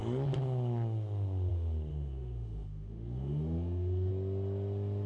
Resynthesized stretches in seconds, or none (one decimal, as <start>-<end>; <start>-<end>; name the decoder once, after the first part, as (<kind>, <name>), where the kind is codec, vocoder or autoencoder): 1.9-4.1 (autoencoder, DAC-VAE)